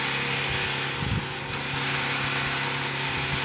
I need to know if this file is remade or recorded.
recorded